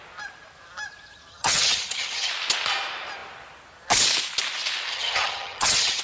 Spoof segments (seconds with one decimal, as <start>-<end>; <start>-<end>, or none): 1.3-2.3; 4.9-6.0